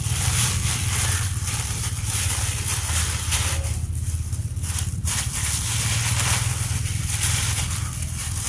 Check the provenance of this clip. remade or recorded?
recorded